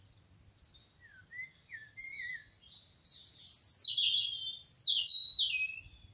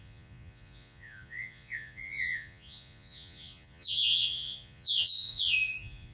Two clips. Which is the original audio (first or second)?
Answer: first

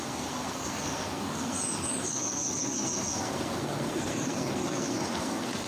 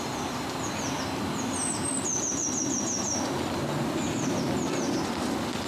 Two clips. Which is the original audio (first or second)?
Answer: second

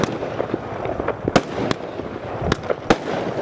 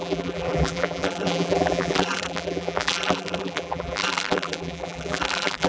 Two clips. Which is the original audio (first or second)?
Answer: first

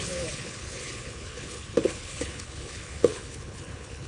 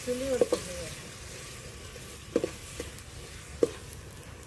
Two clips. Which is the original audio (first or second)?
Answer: second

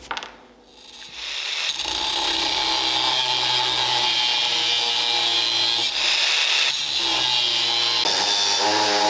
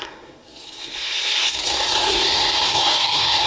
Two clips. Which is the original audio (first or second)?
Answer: first